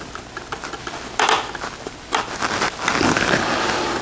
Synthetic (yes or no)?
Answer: no